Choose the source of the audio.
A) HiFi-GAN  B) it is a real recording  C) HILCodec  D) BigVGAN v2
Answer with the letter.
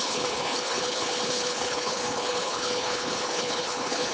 C